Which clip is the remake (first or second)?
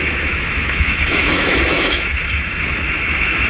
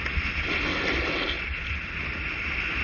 first